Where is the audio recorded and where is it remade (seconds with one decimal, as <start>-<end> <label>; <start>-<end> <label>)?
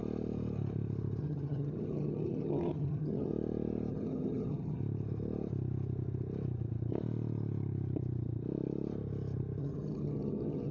0.0-1.2 recorded; 1.2-3.3 remade; 3.3-3.9 recorded; 3.9-4.8 remade; 4.8-9.6 recorded; 9.6-10.7 remade